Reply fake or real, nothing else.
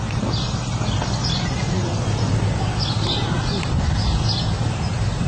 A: real